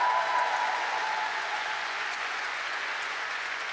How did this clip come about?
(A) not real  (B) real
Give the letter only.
A